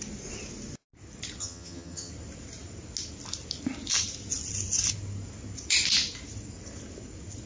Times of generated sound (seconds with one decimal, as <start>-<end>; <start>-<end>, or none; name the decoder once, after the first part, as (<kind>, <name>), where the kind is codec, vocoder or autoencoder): 1.4-2.1 (vocoder, HiFi-GAN)